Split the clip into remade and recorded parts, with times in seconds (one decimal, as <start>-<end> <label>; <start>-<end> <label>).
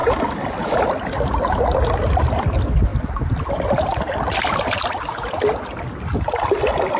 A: 0.0-2.9 recorded; 2.9-4.0 remade; 4.0-7.0 recorded